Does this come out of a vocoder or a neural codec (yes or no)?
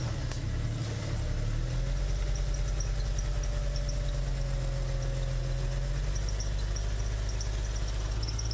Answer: no